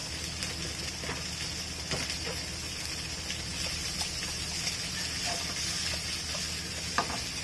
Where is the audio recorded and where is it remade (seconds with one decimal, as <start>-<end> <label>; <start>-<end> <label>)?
0.0-7.4 recorded